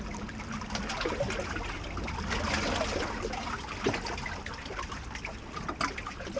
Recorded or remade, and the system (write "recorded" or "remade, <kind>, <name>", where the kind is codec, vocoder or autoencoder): recorded